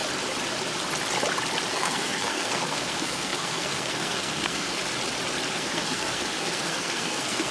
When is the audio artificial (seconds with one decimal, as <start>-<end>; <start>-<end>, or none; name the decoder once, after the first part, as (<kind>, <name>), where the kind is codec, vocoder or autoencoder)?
1.7-4.8 (codec, SNAC); 5.5-7.5